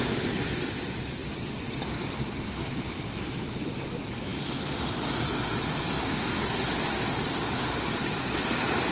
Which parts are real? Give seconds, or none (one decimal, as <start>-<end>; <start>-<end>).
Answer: 0.0-8.9